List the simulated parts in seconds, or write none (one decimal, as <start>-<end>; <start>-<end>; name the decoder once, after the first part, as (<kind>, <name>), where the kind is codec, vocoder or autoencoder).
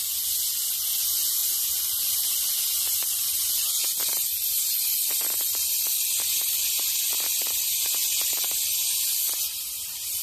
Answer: none